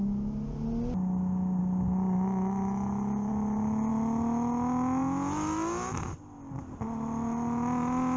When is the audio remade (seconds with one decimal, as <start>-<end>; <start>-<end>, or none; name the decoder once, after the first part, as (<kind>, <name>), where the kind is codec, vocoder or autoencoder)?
none